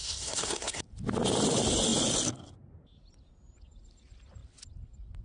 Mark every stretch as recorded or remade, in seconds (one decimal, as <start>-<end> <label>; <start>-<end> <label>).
0.0-0.8 remade; 0.8-5.2 recorded